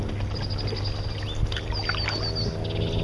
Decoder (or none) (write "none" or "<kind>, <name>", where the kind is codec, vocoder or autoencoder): none